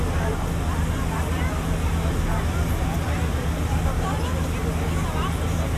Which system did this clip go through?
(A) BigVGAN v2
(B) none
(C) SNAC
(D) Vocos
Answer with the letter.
B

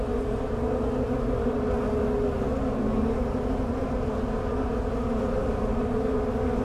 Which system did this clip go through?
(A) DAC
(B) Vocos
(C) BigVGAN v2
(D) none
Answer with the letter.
D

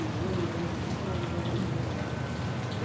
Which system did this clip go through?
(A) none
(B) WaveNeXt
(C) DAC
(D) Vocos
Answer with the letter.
A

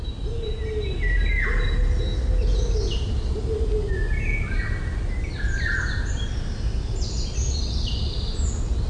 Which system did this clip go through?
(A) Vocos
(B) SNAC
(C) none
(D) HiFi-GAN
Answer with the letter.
C